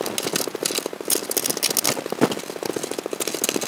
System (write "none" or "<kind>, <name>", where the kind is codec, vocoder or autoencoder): none